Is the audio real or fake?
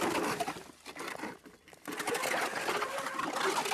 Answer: real